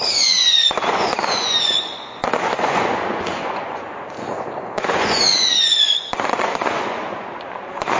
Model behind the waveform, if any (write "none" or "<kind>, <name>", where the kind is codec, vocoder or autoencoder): vocoder, Vocos